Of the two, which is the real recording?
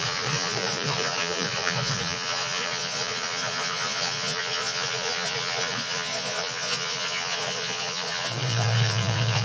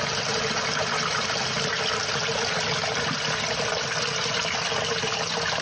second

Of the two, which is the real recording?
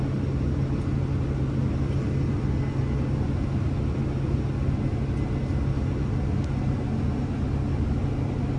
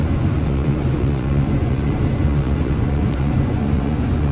first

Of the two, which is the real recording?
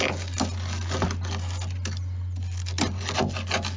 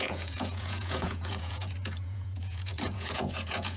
first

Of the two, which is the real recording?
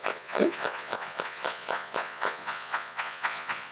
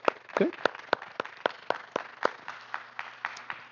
second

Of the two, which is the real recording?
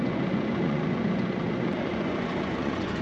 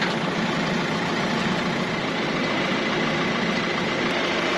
second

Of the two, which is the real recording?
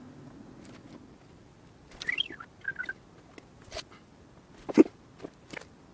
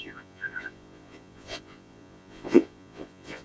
first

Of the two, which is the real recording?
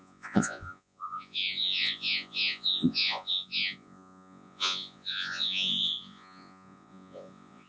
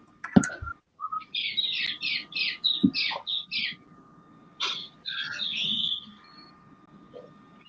second